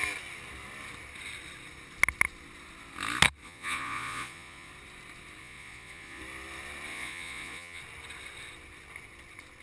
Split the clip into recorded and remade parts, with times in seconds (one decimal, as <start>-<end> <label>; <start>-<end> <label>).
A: 0.0-3.4 recorded; 3.4-4.7 remade; 4.7-5.4 recorded; 5.4-6.2 remade; 6.2-6.9 recorded; 6.9-7.8 remade; 7.8-9.6 recorded

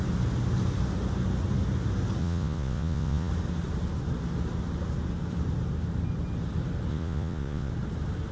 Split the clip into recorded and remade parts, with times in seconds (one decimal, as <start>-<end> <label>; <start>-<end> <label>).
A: 0.0-2.2 recorded; 2.2-3.3 remade; 3.3-6.9 recorded; 6.9-7.7 remade; 7.7-8.3 recorded